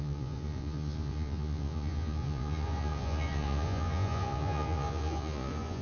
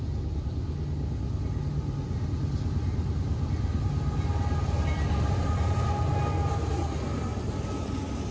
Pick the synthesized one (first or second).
first